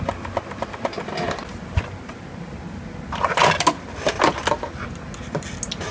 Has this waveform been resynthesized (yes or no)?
no